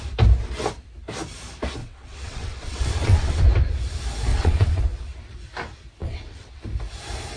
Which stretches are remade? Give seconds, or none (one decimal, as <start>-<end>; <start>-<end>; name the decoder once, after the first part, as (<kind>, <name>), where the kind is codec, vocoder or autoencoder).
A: 1.8-3.4 (vocoder, WaveNeXt); 4.3-4.8; 6.0-6.6